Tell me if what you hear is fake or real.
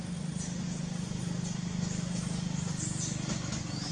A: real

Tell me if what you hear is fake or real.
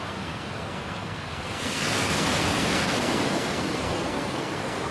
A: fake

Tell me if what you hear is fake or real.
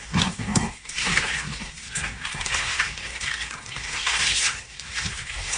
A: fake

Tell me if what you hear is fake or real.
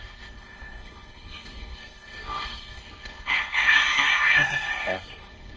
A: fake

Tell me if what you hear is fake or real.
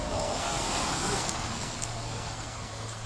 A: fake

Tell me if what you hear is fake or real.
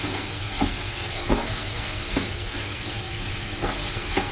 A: fake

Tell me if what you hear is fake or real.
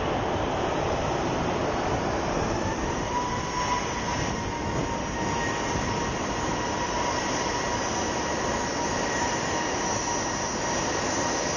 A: real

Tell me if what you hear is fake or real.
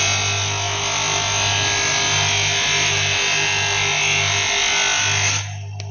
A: real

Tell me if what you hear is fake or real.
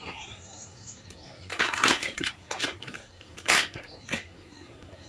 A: fake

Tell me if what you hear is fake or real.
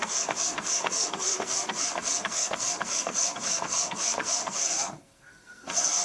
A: fake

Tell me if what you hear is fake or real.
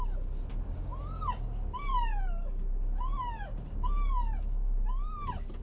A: real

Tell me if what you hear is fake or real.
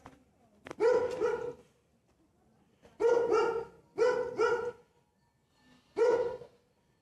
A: real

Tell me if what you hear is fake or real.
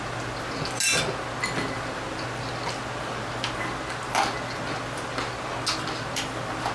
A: real